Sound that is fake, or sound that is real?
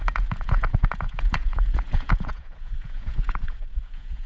fake